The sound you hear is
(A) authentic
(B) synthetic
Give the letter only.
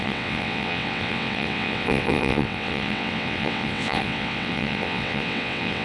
B